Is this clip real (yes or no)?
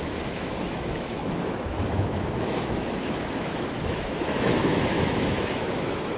no